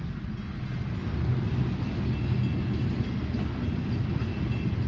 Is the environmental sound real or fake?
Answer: real